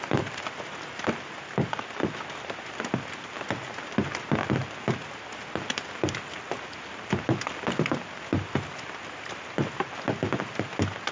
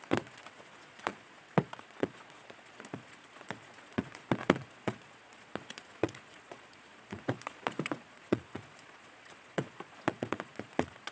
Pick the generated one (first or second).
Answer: second